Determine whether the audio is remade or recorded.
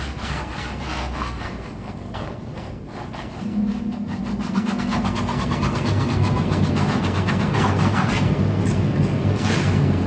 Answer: remade